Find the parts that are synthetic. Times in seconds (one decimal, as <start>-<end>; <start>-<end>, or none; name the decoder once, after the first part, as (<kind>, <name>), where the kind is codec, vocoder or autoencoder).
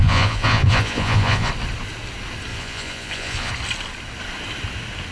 0.0-1.5 (vocoder, Vocos); 2.5-3.5